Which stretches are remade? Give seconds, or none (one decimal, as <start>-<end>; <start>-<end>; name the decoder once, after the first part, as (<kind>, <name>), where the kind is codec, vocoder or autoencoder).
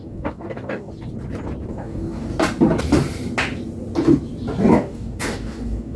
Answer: 0.0-0.9 (codec, DAC); 1.7-2.3; 4.7-6.0